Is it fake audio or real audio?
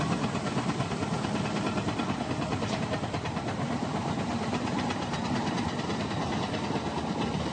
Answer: fake